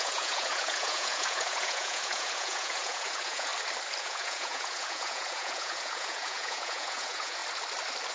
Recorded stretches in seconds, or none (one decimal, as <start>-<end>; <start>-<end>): 3.5-4.0; 7.4-8.1